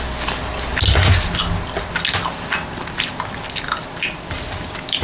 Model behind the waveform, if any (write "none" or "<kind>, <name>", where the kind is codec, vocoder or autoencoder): none